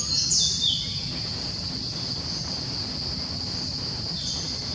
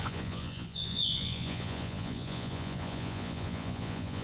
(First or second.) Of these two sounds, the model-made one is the second